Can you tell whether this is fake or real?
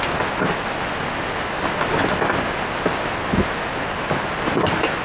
real